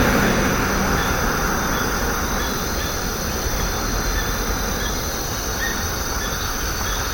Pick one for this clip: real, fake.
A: real